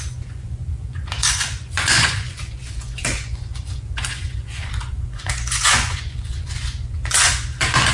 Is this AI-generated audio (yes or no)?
yes